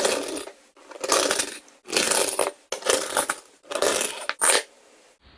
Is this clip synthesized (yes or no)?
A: no